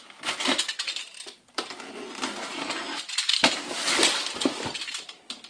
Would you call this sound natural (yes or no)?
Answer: yes